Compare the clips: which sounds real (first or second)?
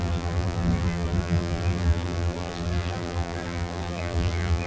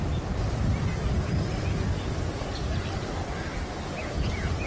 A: second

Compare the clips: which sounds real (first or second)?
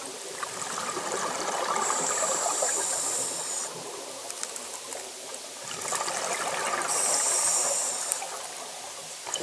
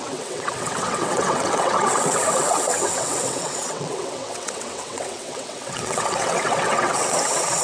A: first